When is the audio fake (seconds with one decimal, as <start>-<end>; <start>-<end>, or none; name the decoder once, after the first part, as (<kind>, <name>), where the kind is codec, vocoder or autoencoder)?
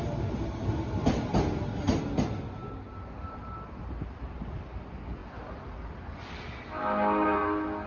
none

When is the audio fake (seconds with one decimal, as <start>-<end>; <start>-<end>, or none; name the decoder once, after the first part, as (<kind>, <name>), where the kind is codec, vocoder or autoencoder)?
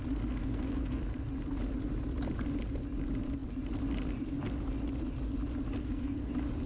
0.4-1.0 (codec, SNAC); 5.8-6.3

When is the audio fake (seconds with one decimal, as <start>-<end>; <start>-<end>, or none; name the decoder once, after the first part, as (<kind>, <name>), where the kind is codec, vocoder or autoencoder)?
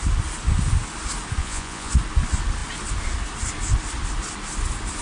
1.4-1.9 (vocoder, Vocos)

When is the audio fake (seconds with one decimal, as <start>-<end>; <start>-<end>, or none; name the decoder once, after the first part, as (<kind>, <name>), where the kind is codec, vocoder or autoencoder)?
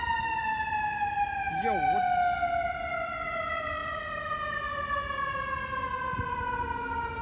none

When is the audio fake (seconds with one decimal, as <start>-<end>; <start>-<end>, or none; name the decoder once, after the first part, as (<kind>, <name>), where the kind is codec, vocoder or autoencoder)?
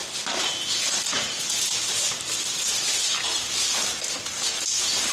0.0-3.1 (vocoder, BigVGAN v2)